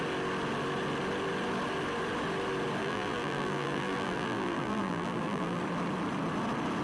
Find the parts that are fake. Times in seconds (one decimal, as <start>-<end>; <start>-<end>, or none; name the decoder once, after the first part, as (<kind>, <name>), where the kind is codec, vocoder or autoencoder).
2.8-5.6 (vocoder, BigVGAN v2)